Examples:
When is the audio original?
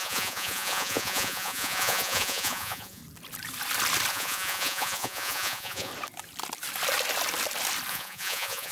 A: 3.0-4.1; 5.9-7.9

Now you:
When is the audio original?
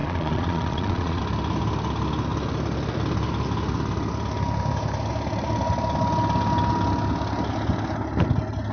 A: 1.2-8.7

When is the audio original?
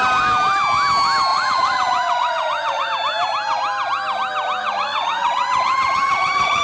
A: 0.0-1.3; 2.9-4.6